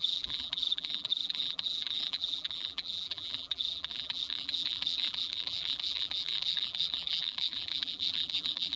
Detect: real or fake fake